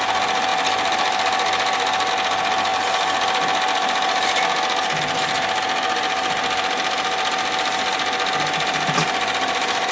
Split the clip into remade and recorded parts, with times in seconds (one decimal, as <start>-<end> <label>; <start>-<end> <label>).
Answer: 0.0-9.9 recorded

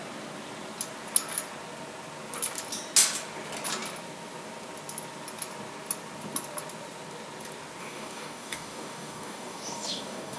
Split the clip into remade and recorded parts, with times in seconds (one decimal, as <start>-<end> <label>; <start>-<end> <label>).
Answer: 0.0-7.8 recorded; 7.8-10.4 remade

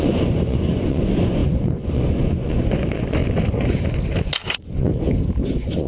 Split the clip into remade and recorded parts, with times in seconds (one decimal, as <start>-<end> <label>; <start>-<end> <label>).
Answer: 0.0-3.2 remade; 3.2-4.5 recorded; 4.5-4.9 remade; 4.9-5.4 recorded; 5.4-5.9 remade

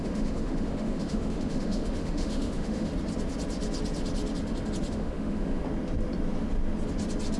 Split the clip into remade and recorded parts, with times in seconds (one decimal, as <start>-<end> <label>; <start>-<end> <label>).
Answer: 0.0-2.9 remade; 2.9-4.9 recorded; 4.9-5.6 remade; 5.6-7.4 recorded